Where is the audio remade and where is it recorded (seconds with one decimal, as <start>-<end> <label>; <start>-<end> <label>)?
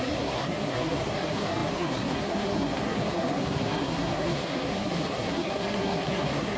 0.0-6.6 remade